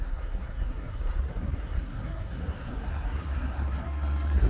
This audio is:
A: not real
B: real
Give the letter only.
A